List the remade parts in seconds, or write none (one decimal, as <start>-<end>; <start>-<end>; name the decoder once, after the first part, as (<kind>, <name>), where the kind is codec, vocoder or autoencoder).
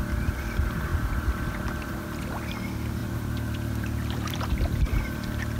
3.0-4.5 (vocoder, BigVGAN v2)